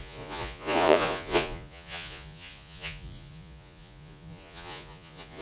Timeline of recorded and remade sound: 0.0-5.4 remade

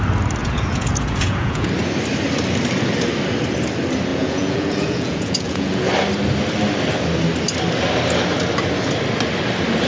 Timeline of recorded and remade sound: 0.0-0.4 recorded; 0.4-1.7 remade; 1.7-4.1 recorded; 4.1-5.9 remade; 5.9-9.9 recorded

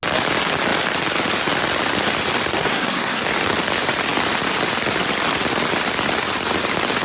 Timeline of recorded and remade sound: 0.0-2.5 recorded; 2.5-3.2 remade; 3.2-7.0 recorded

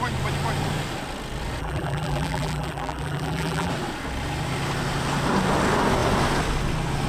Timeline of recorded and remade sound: 0.0-1.6 recorded; 1.6-3.7 remade; 3.7-7.1 recorded

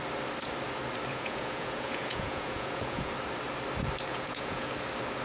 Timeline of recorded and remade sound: 0.0-1.1 recorded; 1.1-3.1 remade; 3.1-4.1 recorded; 4.1-4.7 remade; 4.7-5.2 recorded

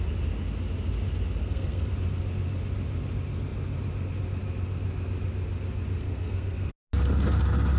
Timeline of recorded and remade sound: 0.0-1.4 recorded; 1.4-1.9 remade; 1.9-6.0 recorded; 6.0-6.7 remade; 6.7-7.8 recorded